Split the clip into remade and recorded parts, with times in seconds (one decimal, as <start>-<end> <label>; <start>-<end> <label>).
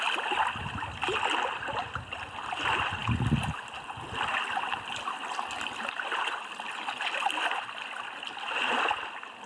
0.0-9.5 recorded